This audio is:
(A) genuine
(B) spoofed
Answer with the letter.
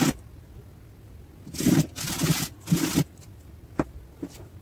A